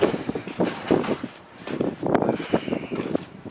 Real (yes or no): no